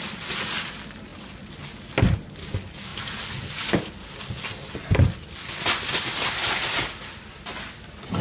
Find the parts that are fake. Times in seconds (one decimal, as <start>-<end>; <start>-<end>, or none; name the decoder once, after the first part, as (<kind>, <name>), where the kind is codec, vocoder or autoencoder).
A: none